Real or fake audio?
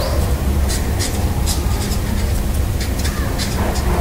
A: real